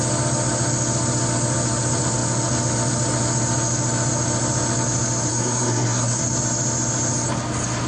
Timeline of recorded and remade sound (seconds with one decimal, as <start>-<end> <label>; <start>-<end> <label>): 0.0-5.3 recorded; 5.3-6.2 remade; 6.2-7.9 recorded